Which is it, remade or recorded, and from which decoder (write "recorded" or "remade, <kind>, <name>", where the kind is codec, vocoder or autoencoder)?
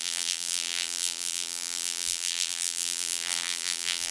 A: remade, vocoder, BigVGAN v2